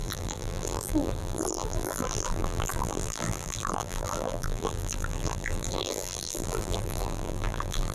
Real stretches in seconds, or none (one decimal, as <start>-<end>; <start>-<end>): none